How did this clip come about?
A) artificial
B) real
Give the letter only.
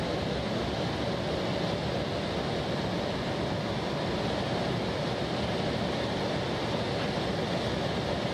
B